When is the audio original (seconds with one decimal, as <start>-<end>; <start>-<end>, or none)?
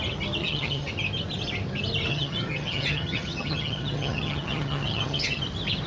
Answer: 0.0-0.4; 0.9-2.1; 5.4-5.9